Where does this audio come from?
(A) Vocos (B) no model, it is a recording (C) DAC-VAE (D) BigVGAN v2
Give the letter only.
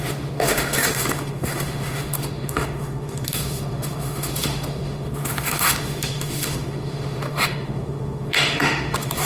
C